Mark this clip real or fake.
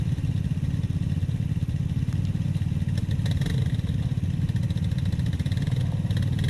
real